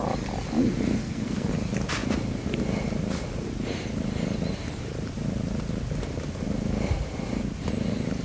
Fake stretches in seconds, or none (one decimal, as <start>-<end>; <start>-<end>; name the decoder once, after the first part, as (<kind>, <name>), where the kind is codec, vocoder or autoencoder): 1.0-1.5 (codec, SNAC)